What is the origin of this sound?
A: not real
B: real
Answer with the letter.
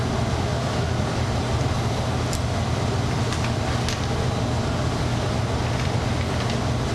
B